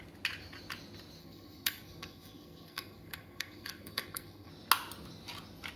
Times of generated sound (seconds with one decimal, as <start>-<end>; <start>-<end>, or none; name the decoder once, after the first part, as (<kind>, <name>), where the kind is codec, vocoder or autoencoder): 1.2-4.5 (codec, SNAC)

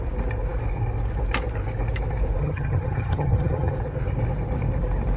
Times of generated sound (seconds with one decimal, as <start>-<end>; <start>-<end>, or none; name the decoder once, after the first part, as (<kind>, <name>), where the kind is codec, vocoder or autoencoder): 2.4-3.7 (vocoder, HiFi-GAN)

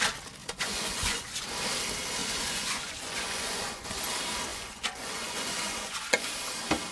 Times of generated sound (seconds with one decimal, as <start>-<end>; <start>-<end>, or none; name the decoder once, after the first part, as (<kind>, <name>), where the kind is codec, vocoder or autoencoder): 0.4-1.5 (vocoder, Vocos); 2.2-4.0; 4.5-6.3

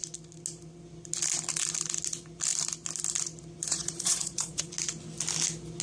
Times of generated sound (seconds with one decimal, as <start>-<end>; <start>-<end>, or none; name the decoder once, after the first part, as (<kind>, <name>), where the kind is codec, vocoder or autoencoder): 3.7-4.7 (vocoder, Vocos)

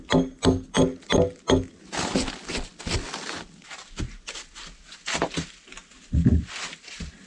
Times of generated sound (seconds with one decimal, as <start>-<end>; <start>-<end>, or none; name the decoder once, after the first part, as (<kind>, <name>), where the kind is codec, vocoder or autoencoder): none

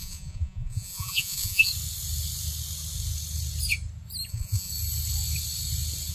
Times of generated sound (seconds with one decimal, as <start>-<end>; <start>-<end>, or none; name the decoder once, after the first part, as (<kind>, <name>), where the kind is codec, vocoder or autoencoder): 0.0-1.7 (vocoder, Vocos); 4.3-4.7

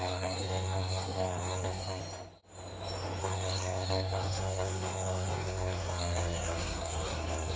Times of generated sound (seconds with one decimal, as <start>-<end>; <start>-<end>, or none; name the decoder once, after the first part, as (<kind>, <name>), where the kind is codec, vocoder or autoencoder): 0.0-2.0 (codec, SNAC); 3.2-7.6

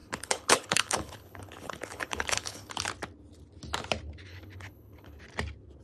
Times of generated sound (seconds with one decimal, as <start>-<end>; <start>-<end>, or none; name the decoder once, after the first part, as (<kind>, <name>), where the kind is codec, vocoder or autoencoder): 0.0-2.7 (codec, HILCodec); 4.3-5.2